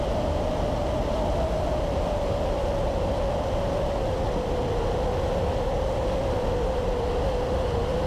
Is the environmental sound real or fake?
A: real